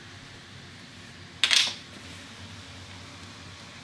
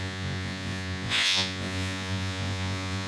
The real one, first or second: first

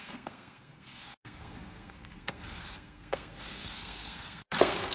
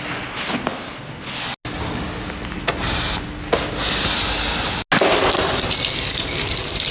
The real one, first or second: second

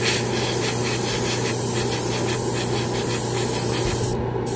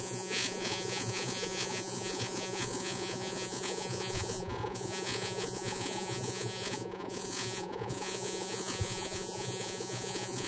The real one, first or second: first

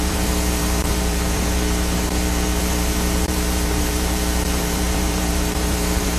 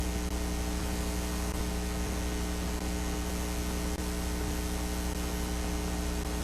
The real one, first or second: second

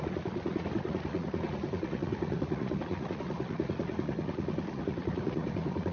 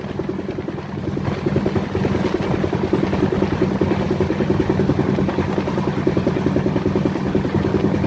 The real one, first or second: second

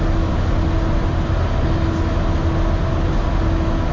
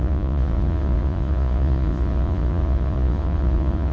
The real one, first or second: first